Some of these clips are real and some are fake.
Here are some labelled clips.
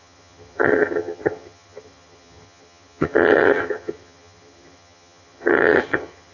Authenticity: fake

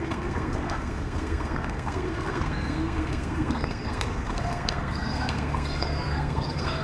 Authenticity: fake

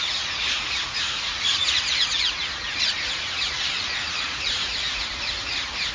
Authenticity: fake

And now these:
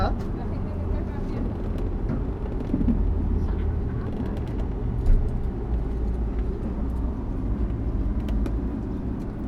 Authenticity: real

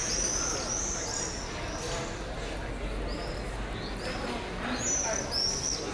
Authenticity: real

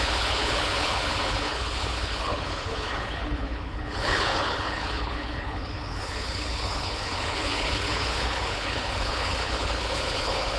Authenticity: fake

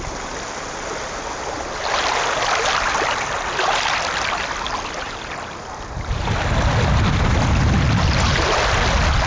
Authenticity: real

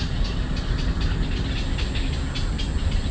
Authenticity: real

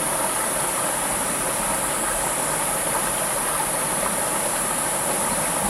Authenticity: real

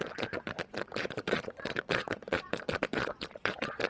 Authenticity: fake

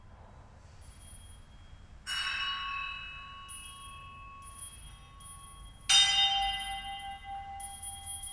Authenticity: real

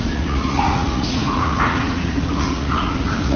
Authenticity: fake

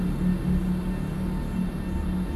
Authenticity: real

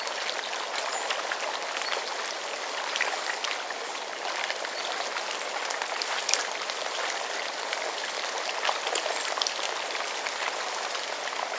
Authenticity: real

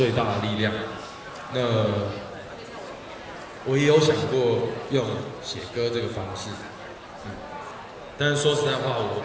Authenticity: real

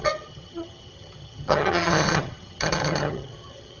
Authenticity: fake